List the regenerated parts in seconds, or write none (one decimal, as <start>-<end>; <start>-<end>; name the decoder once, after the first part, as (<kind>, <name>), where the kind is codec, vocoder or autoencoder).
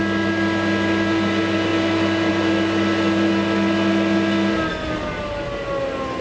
none